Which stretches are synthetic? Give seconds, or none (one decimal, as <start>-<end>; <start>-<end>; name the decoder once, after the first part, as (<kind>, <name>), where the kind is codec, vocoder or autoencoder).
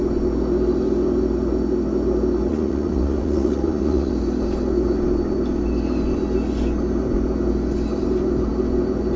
2.5-4.1 (vocoder, Vocos)